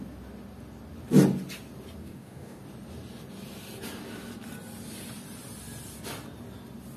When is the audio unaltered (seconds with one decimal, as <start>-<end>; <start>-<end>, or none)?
0.0-2.0; 2.6-7.0